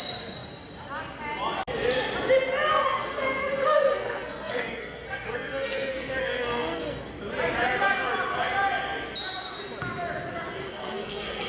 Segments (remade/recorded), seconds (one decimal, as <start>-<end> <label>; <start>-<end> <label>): 0.0-2.7 recorded; 2.7-7.1 remade; 7.1-10.6 recorded; 10.6-11.5 remade

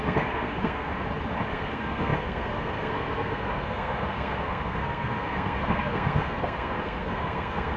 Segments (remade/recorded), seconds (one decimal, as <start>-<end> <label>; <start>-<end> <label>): 0.0-0.9 remade; 0.9-1.5 recorded; 1.5-7.8 remade

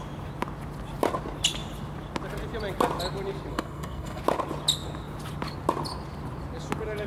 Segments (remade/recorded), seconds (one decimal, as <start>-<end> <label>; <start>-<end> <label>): 0.0-3.5 recorded; 3.5-4.2 remade; 4.2-7.1 recorded

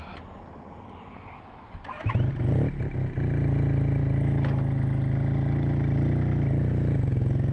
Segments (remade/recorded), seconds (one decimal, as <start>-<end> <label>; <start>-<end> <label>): 0.0-7.5 recorded

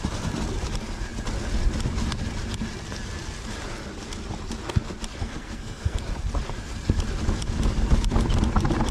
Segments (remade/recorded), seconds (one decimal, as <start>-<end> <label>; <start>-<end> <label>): 0.0-5.2 recorded; 5.2-6.0 remade; 6.0-8.9 recorded

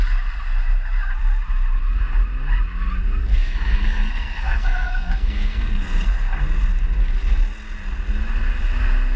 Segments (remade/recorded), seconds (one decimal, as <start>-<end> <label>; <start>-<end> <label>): 0.0-3.2 recorded; 3.2-6.4 remade; 6.4-9.2 recorded

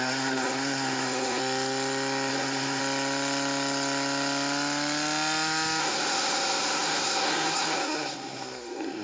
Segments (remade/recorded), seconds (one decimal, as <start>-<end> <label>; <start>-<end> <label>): 0.0-1.4 remade; 1.4-2.3 recorded; 2.3-2.8 remade; 2.8-5.8 recorded; 5.8-9.0 remade